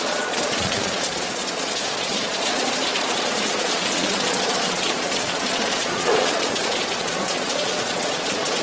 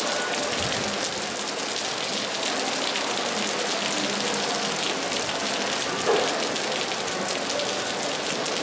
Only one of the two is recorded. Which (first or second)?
second